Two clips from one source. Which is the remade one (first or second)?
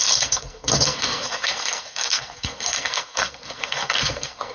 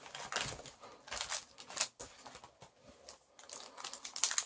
first